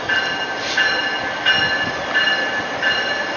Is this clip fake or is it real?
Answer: real